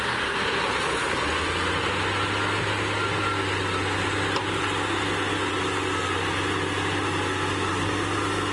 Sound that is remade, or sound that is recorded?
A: recorded